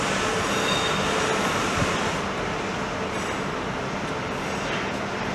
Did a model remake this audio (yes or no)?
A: no